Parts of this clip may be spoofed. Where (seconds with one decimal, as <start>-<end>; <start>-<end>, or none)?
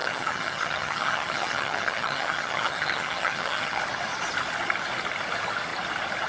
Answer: 0.0-3.8